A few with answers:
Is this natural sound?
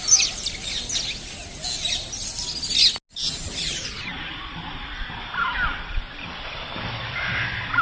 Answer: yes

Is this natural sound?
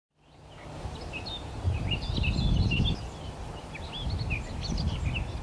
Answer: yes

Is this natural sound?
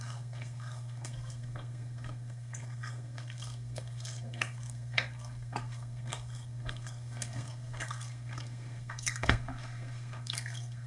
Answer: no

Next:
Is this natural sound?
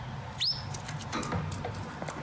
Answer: yes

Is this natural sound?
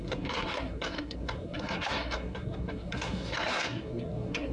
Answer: no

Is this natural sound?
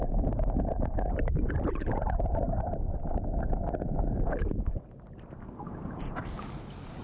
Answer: yes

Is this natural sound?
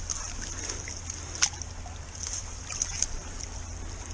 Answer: yes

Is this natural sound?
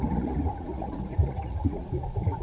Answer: no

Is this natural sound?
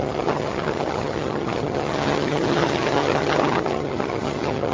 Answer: no